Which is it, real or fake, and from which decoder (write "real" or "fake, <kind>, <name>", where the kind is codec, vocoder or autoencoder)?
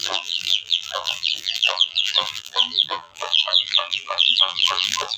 fake, vocoder, BigVGAN v2